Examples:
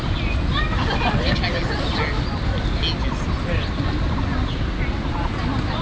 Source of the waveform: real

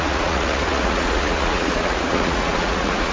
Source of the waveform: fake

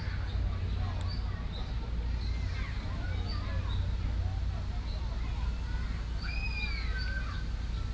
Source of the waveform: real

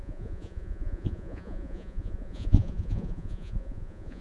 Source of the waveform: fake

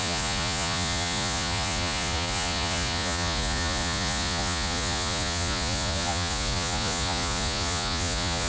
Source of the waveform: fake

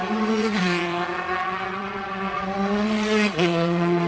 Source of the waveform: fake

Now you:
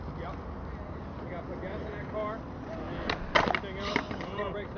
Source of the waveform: real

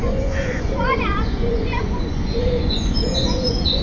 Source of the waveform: fake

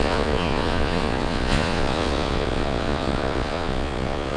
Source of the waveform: fake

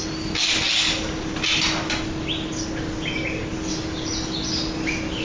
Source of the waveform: real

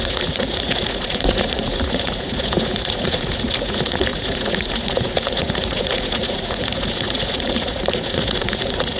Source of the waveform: fake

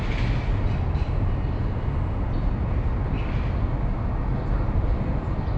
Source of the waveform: real